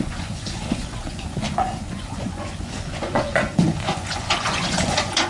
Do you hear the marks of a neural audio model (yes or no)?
yes